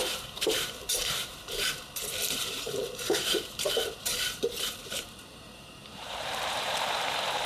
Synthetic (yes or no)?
yes